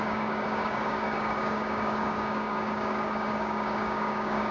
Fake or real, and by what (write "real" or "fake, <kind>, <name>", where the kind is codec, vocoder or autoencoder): fake, codec, DAC